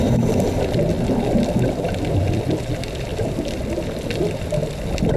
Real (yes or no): yes